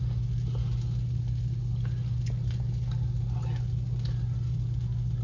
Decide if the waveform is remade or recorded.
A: recorded